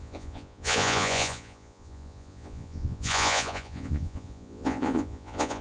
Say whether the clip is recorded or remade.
remade